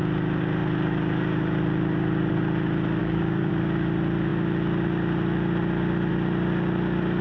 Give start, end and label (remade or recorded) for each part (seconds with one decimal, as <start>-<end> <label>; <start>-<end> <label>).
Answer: 0.0-3.0 recorded; 3.0-3.5 remade; 3.5-7.2 recorded